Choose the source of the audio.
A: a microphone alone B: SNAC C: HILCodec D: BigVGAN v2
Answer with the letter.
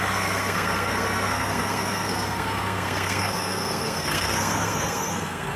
B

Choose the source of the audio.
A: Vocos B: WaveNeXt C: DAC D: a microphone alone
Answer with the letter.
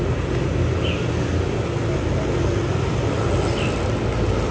D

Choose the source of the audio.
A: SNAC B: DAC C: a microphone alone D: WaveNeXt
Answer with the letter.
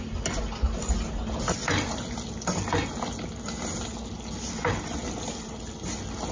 C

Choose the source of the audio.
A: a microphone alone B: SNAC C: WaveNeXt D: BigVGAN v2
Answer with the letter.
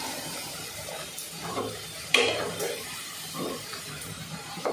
D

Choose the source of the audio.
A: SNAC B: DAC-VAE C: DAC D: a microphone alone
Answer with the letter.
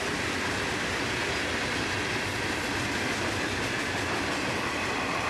D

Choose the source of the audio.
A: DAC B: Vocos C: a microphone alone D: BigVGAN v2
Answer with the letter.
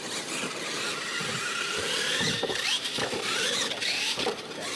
D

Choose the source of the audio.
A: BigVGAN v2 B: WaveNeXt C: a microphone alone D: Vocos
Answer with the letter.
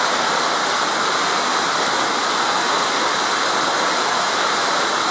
C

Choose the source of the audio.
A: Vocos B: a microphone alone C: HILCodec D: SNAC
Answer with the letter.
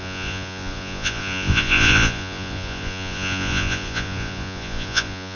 A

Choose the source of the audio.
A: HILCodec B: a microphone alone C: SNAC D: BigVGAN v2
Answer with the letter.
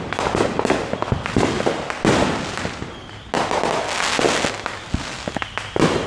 B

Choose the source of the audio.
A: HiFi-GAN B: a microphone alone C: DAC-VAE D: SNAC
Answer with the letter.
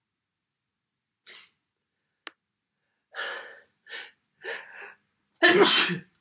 B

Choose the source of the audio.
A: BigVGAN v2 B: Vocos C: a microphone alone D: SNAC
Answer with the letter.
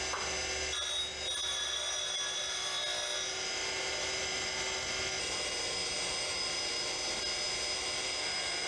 C